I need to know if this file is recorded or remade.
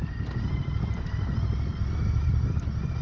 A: recorded